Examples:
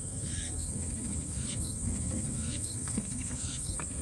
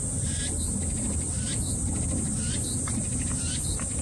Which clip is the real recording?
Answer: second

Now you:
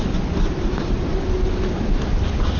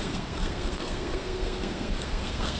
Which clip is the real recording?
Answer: first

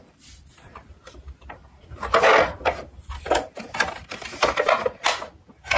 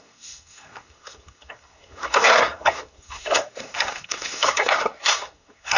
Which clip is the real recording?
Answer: first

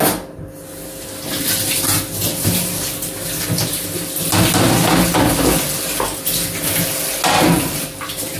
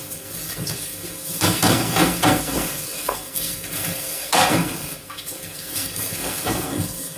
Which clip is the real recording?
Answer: first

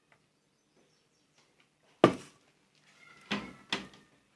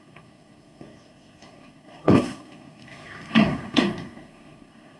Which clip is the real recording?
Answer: first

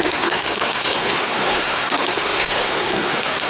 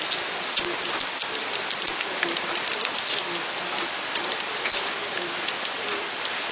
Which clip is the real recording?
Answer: second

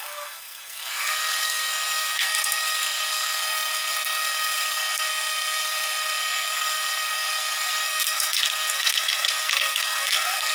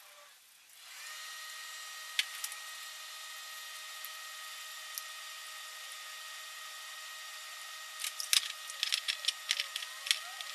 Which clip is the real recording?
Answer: second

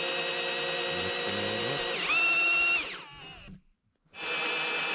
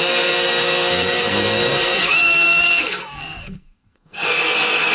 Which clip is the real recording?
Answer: first